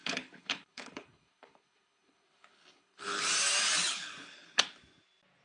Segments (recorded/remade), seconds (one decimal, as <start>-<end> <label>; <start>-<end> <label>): 0.0-3.2 remade; 3.2-3.9 recorded; 3.9-4.6 remade; 4.6-5.4 recorded